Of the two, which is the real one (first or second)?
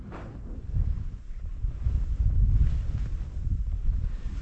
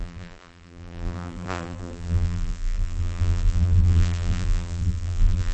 first